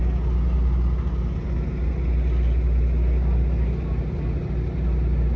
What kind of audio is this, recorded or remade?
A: recorded